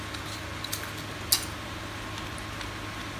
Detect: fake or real real